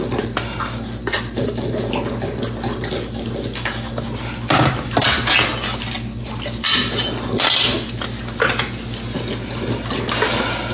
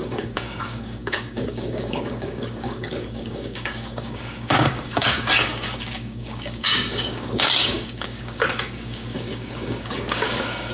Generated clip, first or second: second